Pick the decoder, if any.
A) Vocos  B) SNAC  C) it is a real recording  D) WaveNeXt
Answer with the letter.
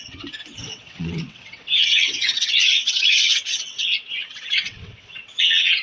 D